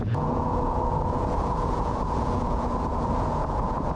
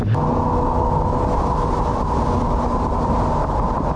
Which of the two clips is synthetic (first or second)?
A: first